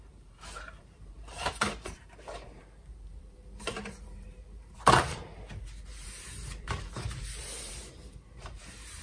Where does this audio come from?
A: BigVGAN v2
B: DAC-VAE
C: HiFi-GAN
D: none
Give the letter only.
A